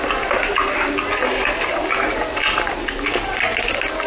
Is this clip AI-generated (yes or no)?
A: no